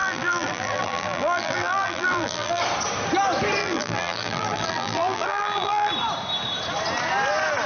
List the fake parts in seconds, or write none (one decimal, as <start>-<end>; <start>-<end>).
0.0-2.6; 3.6-5.9

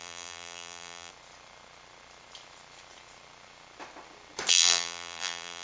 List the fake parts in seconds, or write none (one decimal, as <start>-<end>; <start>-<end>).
0.0-1.1; 4.5-5.6

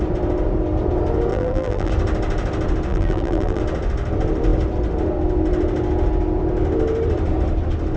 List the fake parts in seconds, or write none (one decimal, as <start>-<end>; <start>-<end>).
1.3-1.9; 2.9-3.6